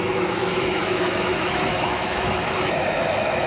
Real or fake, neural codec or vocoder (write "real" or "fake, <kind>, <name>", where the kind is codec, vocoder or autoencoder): fake, autoencoder, DAC-VAE